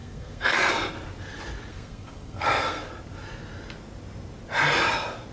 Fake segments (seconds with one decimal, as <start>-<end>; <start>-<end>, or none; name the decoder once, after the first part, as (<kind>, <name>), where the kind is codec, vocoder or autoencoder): 0.0-0.7 (codec, SNAC); 1.7-2.9